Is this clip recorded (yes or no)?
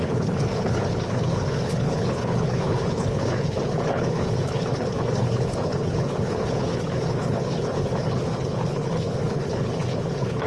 no